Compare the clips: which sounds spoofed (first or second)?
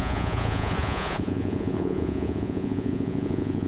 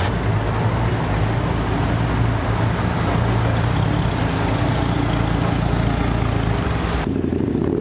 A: first